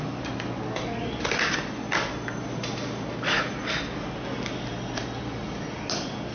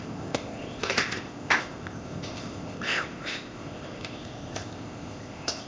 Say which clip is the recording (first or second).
first